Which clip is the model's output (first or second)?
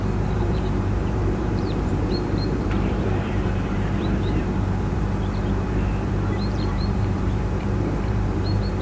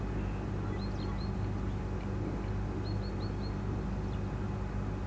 first